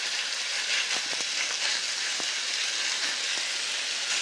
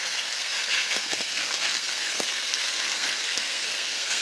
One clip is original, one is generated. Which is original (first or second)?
first